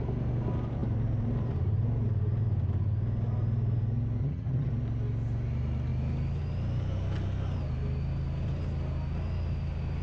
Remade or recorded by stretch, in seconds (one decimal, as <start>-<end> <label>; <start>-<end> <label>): 0.0-4.2 recorded; 4.2-4.7 remade; 4.7-10.0 recorded